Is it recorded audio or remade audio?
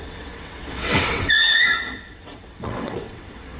remade